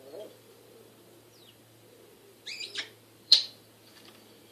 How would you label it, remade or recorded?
remade